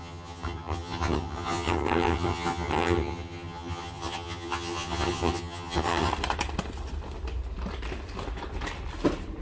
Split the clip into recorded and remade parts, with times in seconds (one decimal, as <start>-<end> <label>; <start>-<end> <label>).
0.0-6.1 remade; 6.1-9.4 recorded

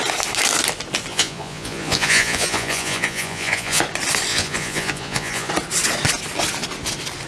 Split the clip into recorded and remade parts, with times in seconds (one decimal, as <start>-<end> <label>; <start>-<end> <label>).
0.0-1.1 recorded; 1.1-3.8 remade; 3.8-4.3 recorded; 4.3-5.5 remade; 5.5-7.3 recorded

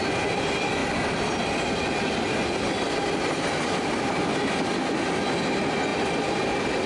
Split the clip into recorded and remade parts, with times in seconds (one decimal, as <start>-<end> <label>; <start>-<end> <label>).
0.0-6.9 recorded

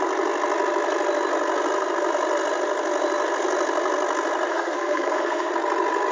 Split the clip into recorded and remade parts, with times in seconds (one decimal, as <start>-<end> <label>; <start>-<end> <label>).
0.0-4.5 recorded; 4.5-5.5 remade; 5.5-6.1 recorded

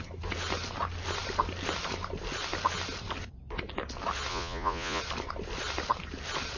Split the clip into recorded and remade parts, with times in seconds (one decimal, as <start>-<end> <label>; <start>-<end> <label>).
0.0-4.3 recorded; 4.3-5.0 remade; 5.0-6.6 recorded

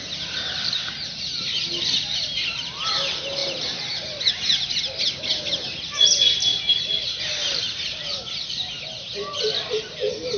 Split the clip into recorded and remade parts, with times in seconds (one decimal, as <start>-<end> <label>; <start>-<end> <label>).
0.0-10.4 recorded

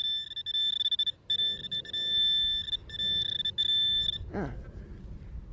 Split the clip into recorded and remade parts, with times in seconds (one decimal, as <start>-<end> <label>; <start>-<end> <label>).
0.0-5.5 recorded

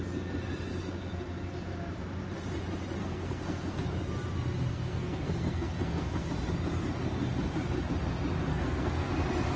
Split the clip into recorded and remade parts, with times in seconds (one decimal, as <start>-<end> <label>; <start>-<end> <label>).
0.0-3.0 recorded; 3.0-3.8 remade; 3.8-4.7 recorded; 4.7-6.3 remade; 6.3-8.5 recorded; 8.5-9.1 remade; 9.1-9.6 recorded